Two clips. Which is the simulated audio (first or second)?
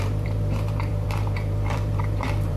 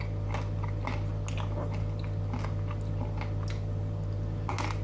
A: first